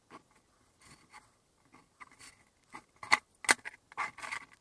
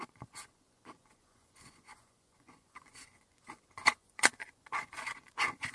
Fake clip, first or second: second